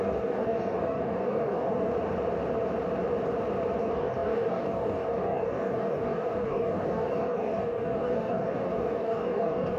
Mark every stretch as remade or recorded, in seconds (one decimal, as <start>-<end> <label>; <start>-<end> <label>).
0.0-1.9 remade; 1.9-3.8 recorded; 3.8-9.8 remade